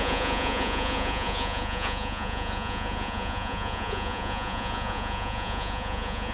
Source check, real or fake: fake